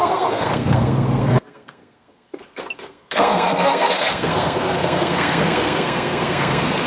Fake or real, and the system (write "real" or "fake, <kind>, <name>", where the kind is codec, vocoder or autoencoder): fake, codec, SNAC